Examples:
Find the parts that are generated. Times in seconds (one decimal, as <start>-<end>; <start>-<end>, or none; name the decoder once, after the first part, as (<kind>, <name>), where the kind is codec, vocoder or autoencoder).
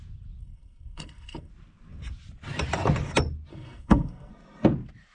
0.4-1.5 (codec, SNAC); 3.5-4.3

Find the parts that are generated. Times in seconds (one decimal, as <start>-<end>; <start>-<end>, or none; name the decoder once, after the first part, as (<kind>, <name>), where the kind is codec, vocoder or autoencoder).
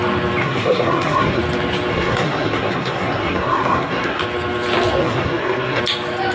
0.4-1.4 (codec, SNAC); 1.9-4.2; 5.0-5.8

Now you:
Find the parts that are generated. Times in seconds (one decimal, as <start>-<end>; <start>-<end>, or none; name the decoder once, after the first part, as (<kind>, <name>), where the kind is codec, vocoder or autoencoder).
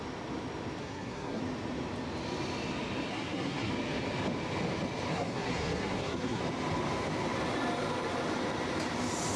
0.8-1.4 (codec, SNAC); 3.1-3.7; 5.1-6.4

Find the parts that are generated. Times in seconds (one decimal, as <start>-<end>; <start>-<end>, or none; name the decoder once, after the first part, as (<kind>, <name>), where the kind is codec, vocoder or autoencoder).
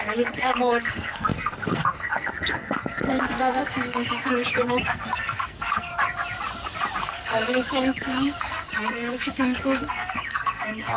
0.0-5.9 (codec, SNAC); 7.0-11.0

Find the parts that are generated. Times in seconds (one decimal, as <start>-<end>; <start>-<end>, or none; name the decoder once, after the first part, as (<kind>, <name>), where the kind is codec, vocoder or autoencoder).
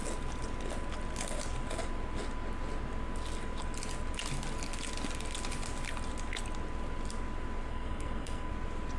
7.7-8.5 (codec, SNAC)